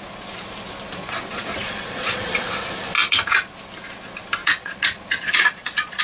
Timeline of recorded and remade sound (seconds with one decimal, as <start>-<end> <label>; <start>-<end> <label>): 0.0-1.0 recorded; 1.0-2.3 remade; 2.3-4.4 recorded; 4.4-6.0 remade